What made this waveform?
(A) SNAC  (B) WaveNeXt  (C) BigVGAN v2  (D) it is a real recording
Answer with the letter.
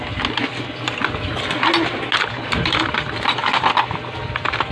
D